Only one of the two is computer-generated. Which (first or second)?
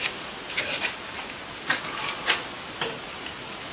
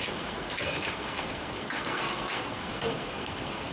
second